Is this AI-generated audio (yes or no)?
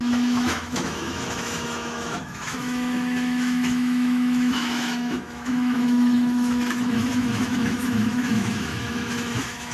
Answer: yes